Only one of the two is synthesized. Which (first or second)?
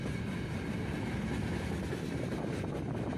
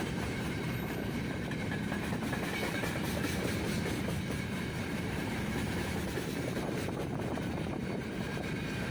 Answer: second